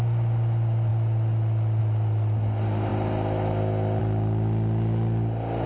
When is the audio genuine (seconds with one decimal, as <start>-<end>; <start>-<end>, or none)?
0.0-5.7